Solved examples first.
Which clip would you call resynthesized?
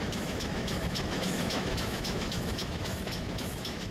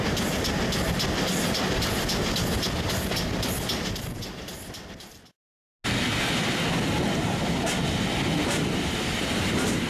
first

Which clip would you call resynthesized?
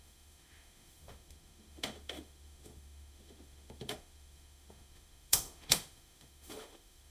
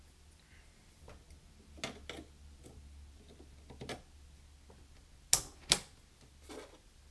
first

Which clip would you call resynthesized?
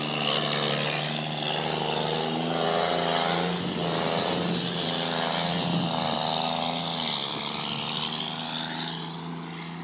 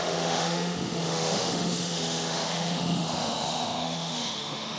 second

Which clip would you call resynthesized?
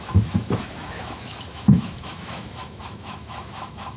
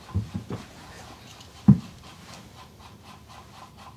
first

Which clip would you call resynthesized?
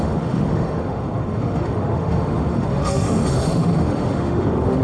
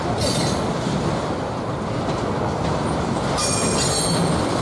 first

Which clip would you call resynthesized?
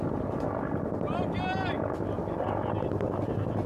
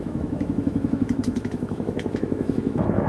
second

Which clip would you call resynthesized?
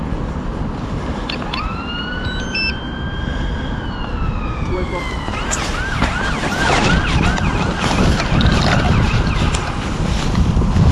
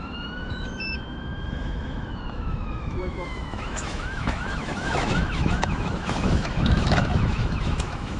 second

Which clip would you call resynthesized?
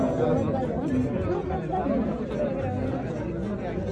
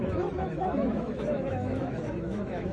second